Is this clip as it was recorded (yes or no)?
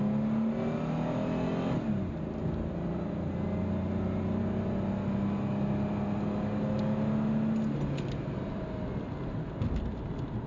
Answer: yes